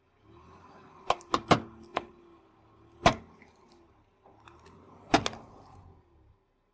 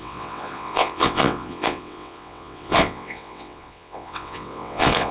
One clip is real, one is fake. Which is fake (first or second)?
second